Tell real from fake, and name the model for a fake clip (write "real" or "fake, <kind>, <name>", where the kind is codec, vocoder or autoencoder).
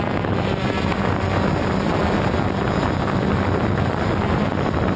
real